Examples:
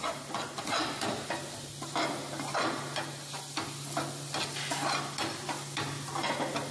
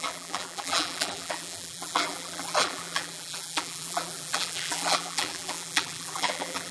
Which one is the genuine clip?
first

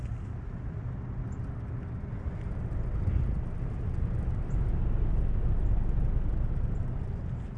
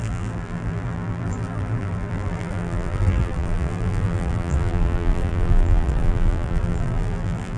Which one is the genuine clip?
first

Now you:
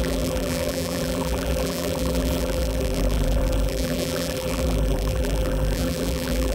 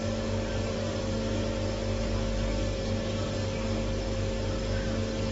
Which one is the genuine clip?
second